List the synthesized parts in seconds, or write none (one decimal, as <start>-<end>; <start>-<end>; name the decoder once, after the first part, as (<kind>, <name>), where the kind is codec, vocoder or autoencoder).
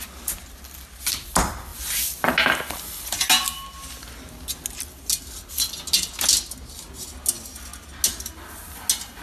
none